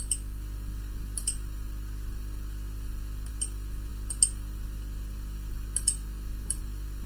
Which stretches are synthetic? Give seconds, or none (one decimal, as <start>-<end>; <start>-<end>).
none